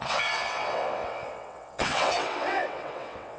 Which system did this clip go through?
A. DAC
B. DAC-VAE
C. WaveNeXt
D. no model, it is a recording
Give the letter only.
C